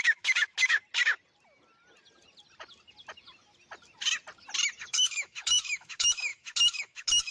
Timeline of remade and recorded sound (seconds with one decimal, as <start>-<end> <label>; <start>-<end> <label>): 0.0-0.8 remade; 0.8-4.8 recorded; 4.8-7.3 remade